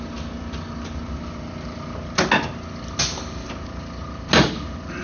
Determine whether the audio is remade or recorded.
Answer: recorded